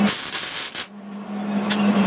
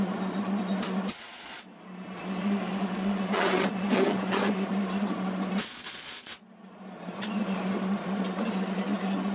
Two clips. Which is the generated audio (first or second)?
second